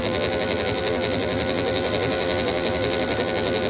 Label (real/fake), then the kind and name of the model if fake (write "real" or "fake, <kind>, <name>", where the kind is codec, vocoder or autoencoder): fake, vocoder, BigVGAN v2